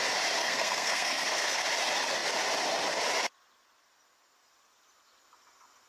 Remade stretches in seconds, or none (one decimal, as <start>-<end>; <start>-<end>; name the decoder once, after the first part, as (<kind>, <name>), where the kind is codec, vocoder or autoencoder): 0.4-1.6 (codec, SNAC)